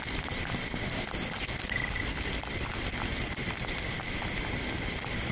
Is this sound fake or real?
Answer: real